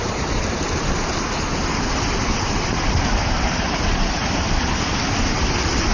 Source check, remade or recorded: recorded